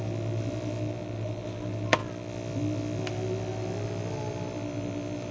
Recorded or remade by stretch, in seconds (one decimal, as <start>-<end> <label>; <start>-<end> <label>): 0.0-5.3 recorded